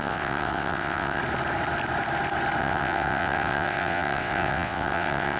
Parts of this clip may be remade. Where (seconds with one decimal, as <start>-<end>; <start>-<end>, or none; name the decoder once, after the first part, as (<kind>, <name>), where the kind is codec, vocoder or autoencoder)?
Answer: 0.0-1.2 (vocoder, WaveNeXt); 2.6-5.4